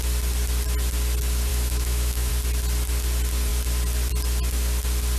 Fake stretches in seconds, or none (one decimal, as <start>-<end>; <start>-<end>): 1.5-2.3